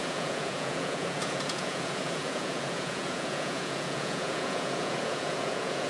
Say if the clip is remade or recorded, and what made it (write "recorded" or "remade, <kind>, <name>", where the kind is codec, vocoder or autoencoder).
remade, vocoder, Vocos